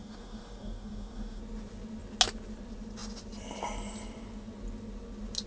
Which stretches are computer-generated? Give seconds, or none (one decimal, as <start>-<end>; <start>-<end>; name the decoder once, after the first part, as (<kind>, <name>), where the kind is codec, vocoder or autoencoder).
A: 0.0-1.4 (codec, DAC)